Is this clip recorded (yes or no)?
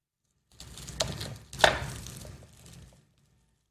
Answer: yes